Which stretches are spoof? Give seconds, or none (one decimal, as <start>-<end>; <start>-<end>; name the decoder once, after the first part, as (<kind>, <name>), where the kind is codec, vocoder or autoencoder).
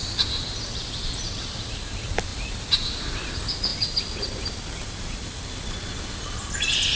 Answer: none